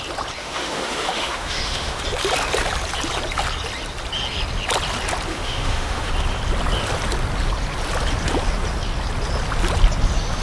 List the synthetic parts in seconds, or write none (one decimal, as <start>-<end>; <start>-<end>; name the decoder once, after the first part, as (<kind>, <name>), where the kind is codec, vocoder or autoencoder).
0.4-2.0 (autoencoder, DAC-VAE); 5.3-6.1

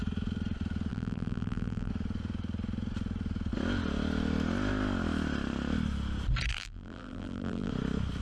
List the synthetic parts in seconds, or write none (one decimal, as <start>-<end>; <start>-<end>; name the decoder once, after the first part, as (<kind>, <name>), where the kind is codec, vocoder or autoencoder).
0.9-1.9 (vocoder, BigVGAN v2); 6.5-7.7

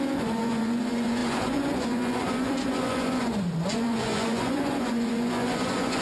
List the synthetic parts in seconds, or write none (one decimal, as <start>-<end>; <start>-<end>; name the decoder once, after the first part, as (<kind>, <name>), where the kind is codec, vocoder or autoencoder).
0.0-6.0 (vocoder, Vocos)

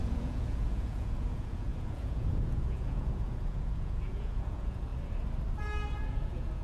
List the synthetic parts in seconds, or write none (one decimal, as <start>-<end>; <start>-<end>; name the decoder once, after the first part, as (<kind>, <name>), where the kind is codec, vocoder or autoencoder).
0.0-4.9 (vocoder, Vocos); 6.1-6.6

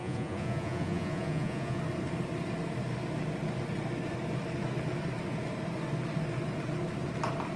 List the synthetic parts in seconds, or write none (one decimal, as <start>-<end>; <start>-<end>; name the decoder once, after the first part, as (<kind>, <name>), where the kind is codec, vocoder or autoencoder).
0.0-1.8 (vocoder, Vocos)

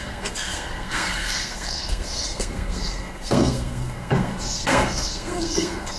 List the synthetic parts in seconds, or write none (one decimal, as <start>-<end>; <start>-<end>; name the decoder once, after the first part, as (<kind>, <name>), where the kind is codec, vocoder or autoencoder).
0.0-6.0 (codec, SNAC)

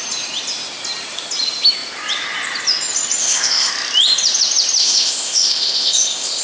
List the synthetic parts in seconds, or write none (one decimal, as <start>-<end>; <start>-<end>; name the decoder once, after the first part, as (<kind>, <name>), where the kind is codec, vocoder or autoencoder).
3.2-3.7 (codec, ZipCodec); 4.8-6.4